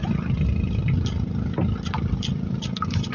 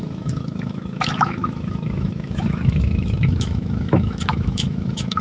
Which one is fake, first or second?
second